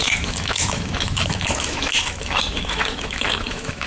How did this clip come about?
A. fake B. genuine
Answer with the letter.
A